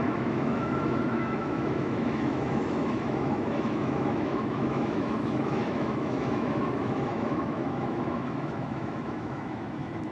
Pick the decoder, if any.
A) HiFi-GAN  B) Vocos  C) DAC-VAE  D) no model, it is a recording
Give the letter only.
C